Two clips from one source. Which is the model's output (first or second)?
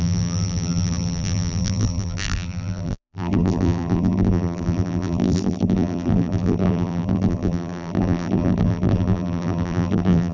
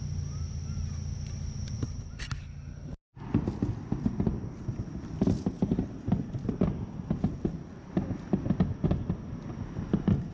first